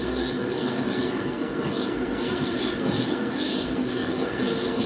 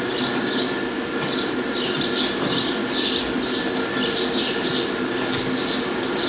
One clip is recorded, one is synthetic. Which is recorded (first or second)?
second